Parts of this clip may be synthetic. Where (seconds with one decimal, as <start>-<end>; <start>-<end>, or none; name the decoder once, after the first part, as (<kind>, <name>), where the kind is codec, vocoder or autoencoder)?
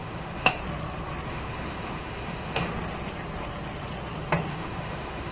0.0-0.6 (autoencoder, DAC-VAE); 1.3-2.7; 4.5-5.3